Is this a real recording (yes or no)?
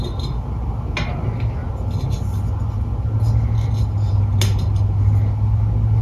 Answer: yes